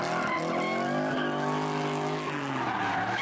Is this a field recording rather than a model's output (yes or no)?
yes